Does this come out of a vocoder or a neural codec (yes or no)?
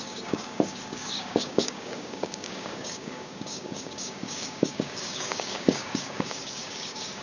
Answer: yes